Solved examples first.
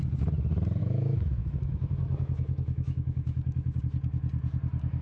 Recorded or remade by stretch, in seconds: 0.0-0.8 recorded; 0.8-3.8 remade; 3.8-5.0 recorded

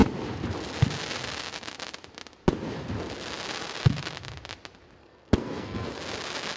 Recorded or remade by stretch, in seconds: 0.0-5.0 recorded; 5.0-6.0 remade; 6.0-6.6 recorded

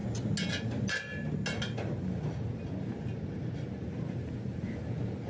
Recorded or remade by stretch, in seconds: 0.0-5.3 recorded

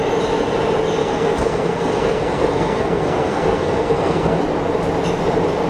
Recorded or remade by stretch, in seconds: 0.0-1.0 recorded; 1.0-4.4 remade; 4.4-5.7 recorded

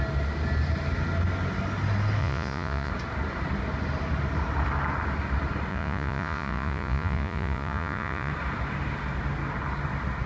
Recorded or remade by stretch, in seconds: 0.0-2.2 recorded; 2.2-2.9 remade; 2.9-5.7 recorded; 5.7-8.3 remade; 8.3-10.3 recorded